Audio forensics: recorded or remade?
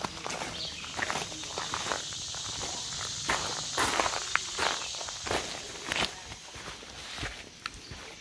recorded